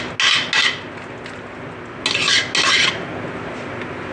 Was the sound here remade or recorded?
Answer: recorded